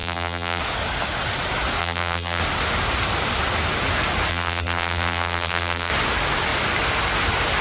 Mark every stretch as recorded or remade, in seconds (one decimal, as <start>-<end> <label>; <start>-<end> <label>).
0.0-0.6 remade; 0.6-1.8 recorded; 1.8-2.4 remade; 2.4-4.3 recorded; 4.3-5.9 remade; 5.9-7.6 recorded